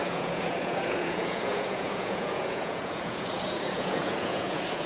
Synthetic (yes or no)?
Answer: yes